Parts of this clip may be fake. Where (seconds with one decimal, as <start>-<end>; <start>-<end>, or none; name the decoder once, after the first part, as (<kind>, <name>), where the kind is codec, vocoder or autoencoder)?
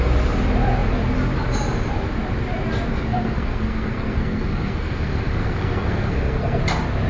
2.9-6.6 (codec, SNAC)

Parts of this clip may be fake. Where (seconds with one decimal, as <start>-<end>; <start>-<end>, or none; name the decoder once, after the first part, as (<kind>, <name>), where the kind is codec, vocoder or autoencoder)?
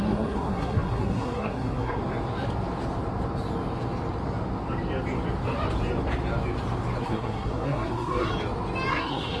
0.0-2.0 (codec, SNAC); 7.0-8.3; 8.9-9.4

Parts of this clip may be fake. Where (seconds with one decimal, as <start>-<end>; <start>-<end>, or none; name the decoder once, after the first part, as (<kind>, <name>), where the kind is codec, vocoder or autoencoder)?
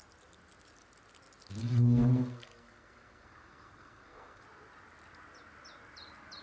1.6-4.4 (codec, SNAC)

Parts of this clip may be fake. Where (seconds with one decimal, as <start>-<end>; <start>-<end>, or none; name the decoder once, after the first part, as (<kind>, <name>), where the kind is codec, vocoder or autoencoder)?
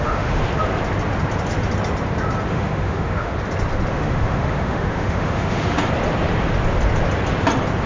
0.0-0.4 (autoencoder, DAC-VAE); 2.5-3.3; 3.9-5.8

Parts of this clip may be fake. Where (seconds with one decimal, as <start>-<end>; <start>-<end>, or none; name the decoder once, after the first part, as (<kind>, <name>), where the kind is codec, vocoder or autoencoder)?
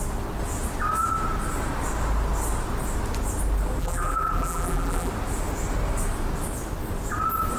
3.8-5.1 (vocoder, BigVGAN v2)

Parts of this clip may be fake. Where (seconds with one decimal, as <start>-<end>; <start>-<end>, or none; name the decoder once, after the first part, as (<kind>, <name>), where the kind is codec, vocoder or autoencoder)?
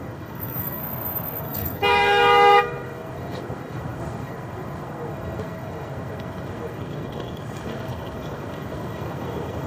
0.0-0.8 (codec, SNAC); 1.4-9.7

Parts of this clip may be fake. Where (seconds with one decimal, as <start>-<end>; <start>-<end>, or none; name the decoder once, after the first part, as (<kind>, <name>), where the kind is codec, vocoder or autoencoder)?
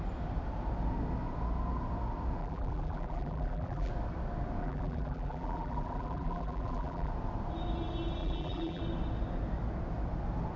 2.4-3.9 (vocoder, BigVGAN v2); 4.6-7.1; 8.2-8.8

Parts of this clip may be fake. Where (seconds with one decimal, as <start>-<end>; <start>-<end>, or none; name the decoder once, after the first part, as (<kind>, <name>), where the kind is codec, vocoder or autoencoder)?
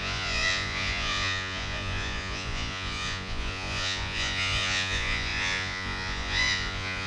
0.0-7.1 (vocoder, Vocos)